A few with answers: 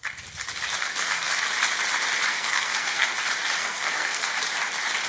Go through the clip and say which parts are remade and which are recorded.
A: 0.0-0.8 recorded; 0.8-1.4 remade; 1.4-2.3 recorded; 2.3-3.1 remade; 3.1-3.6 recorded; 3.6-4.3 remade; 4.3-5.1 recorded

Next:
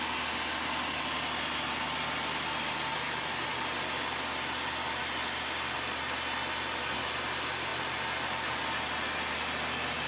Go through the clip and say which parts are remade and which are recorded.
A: 0.0-10.1 recorded